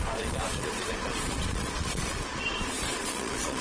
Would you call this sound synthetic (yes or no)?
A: yes